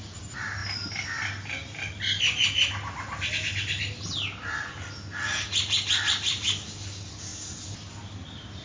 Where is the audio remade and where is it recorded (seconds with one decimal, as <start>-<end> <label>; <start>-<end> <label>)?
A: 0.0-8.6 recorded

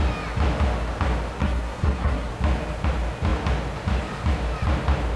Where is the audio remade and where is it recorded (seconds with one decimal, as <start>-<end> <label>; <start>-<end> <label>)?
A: 0.0-1.4 recorded; 1.4-2.3 remade; 2.3-5.2 recorded

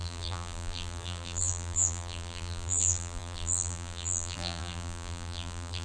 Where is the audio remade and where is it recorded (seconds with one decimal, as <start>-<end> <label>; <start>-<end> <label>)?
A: 0.0-5.8 remade

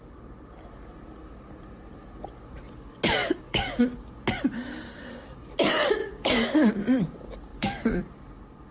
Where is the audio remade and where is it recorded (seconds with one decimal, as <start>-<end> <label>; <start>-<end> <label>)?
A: 0.0-3.2 recorded; 3.2-3.8 remade; 3.8-6.0 recorded; 6.0-6.7 remade; 6.7-7.5 recorded; 7.5-8.0 remade; 8.0-8.7 recorded